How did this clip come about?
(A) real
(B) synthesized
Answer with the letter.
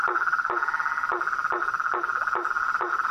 A